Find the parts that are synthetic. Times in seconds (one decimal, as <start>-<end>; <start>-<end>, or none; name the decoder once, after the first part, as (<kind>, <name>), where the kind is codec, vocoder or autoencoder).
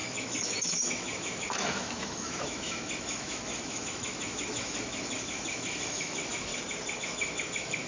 0.0-6.5 (autoencoder, DAC-VAE); 7.0-7.9